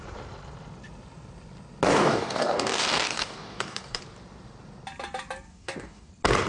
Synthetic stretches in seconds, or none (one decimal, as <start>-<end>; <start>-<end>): 1.9-4.0; 5.5-6.1